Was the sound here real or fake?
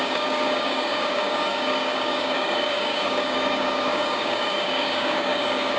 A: fake